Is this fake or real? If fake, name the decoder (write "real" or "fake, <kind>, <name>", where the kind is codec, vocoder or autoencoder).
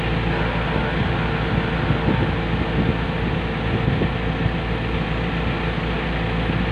real